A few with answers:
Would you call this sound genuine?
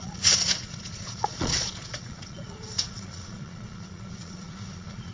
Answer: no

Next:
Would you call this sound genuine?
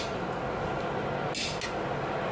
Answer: yes